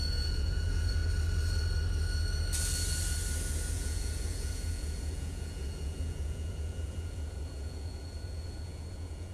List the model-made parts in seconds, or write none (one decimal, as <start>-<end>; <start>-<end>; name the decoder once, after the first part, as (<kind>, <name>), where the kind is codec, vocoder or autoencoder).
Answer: 0.0-1.0 (vocoder, Vocos); 3.7-9.3